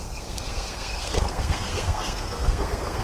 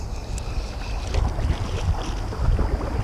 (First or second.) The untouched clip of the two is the second